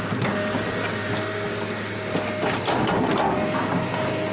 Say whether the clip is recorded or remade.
recorded